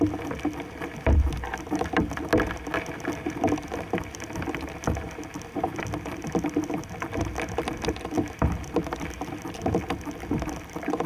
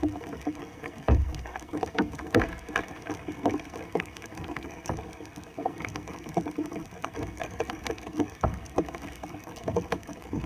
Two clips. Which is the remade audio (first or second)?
second